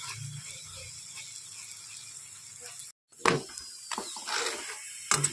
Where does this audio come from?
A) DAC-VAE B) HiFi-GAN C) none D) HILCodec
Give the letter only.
C